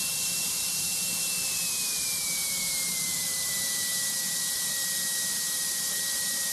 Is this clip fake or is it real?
fake